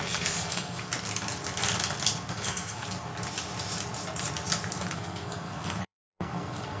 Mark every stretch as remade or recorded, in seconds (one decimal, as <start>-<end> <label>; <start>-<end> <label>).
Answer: 0.0-0.9 remade; 0.9-2.3 recorded; 2.3-3.1 remade; 3.1-4.9 recorded; 4.9-6.8 remade